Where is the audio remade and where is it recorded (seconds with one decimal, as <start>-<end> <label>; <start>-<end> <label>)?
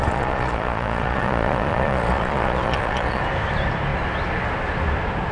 0.0-3.2 remade; 3.2-5.3 recorded